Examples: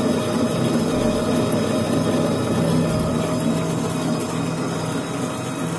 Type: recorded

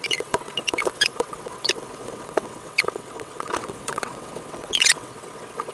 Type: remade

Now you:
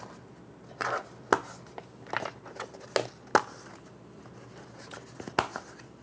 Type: recorded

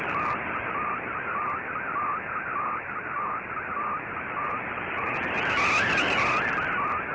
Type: recorded